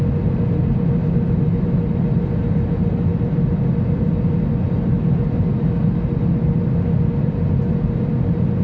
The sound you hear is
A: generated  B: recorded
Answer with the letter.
B